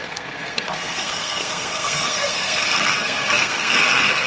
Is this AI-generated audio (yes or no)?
yes